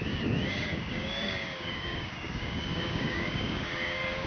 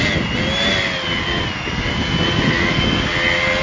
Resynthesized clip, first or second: first